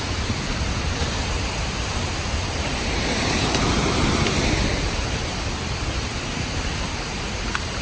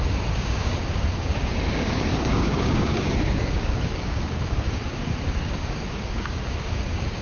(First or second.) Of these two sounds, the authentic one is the first